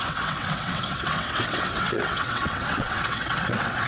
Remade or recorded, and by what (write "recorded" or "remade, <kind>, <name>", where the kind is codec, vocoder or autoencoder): remade, vocoder, WaveNeXt